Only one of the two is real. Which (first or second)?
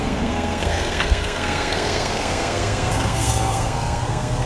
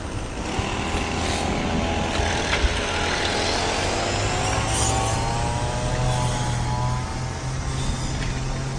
second